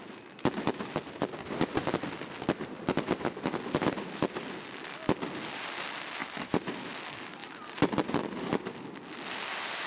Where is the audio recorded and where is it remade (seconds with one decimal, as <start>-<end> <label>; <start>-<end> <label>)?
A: 0.0-6.2 recorded; 6.2-6.9 remade; 6.9-7.4 recorded; 7.4-8.2 remade; 8.2-9.9 recorded